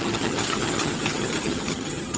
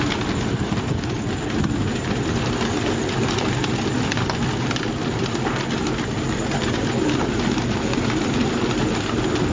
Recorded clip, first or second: second